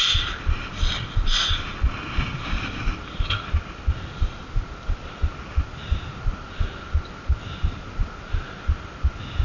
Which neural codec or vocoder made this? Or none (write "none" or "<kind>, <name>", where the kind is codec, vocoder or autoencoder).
none